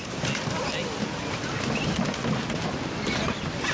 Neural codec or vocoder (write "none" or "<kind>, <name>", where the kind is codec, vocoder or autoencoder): none